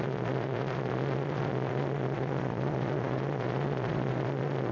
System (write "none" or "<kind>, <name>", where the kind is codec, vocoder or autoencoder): vocoder, Vocos